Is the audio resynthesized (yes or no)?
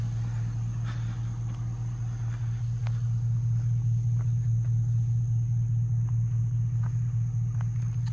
no